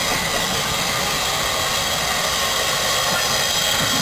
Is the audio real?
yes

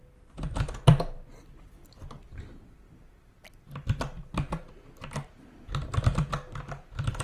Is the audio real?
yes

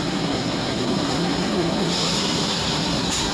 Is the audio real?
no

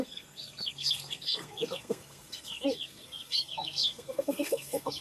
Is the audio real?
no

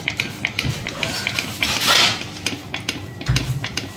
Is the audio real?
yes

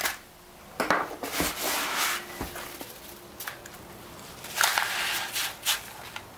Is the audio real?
yes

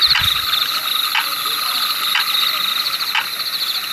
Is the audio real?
yes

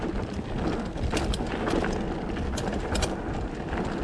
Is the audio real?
yes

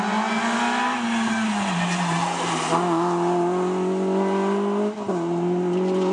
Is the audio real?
yes